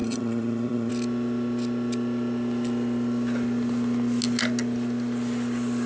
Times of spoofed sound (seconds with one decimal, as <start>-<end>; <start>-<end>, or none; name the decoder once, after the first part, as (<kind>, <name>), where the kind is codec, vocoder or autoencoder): 0.0-0.9 (vocoder, HiFi-GAN)